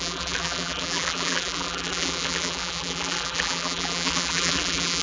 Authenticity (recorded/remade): remade